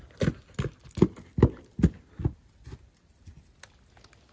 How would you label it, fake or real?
real